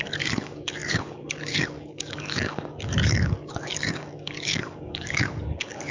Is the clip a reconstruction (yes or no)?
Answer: yes